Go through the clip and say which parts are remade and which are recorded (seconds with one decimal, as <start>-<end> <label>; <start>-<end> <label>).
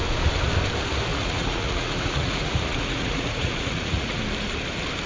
0.0-1.1 recorded; 1.1-4.2 remade; 4.2-5.1 recorded